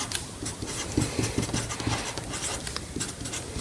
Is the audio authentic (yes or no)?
yes